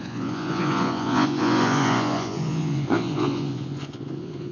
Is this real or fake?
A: fake